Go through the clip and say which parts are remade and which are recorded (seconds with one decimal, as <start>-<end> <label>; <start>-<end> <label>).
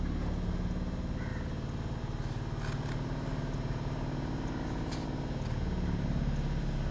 0.0-6.9 recorded